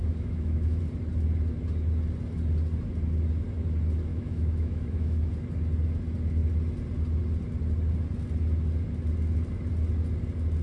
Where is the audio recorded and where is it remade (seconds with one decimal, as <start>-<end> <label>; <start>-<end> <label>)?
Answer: 0.0-0.8 remade; 0.8-4.1 recorded; 4.1-5.3 remade; 5.3-10.6 recorded